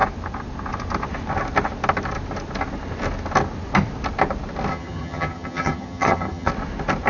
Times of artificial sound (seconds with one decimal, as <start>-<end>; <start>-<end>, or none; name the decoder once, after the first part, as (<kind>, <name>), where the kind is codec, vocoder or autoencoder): 4.7-6.5 (vocoder, HiFi-GAN)